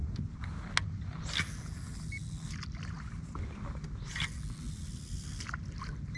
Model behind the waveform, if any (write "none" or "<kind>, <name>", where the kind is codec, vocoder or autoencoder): none